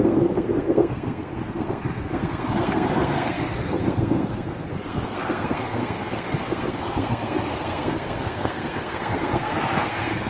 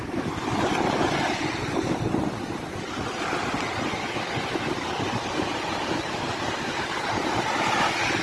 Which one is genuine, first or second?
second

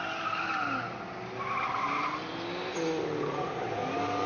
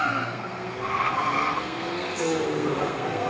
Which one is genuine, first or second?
first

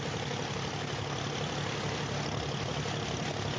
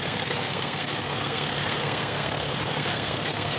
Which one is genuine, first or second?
first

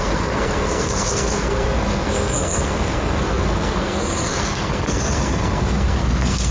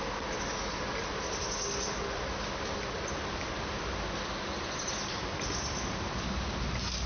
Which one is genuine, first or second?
second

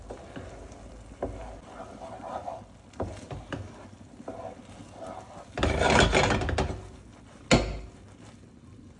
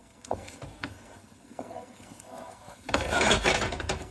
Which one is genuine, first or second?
first